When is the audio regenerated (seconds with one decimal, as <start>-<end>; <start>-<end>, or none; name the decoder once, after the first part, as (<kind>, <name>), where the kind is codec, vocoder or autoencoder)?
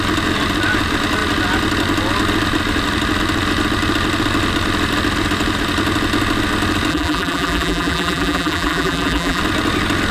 6.9-9.4 (vocoder, BigVGAN v2)